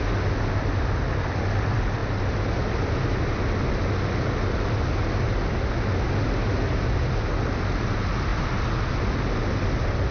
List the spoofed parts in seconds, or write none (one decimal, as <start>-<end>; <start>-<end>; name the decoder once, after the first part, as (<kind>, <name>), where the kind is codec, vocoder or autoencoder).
none

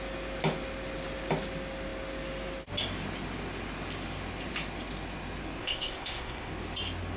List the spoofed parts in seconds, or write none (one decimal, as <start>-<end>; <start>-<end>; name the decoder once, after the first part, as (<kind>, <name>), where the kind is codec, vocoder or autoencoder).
5.6-6.5 (codec, ZipCodec)

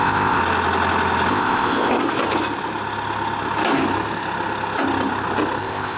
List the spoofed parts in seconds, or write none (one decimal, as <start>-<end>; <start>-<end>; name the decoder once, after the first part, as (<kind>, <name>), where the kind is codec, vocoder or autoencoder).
0.0-0.4 (codec, ZipCodec); 1.3-2.0; 5.6-6.0

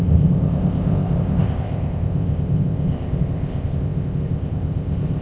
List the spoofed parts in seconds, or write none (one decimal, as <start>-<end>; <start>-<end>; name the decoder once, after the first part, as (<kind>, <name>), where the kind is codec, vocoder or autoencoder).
0.0-5.2 (codec, ZipCodec)